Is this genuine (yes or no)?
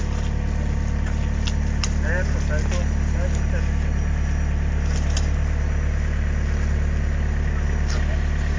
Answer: yes